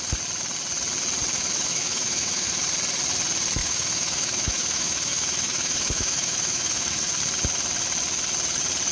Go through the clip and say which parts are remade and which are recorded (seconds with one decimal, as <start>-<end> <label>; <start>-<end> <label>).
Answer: 0.0-1.3 recorded; 1.3-2.6 remade; 2.6-3.6 recorded; 3.6-7.2 remade; 7.2-8.9 recorded